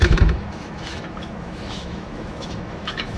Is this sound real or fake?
fake